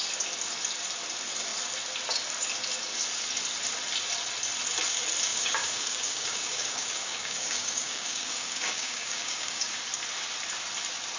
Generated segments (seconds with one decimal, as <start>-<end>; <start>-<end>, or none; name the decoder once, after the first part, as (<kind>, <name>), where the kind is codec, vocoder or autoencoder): 5.3-9.7 (codec, DAC)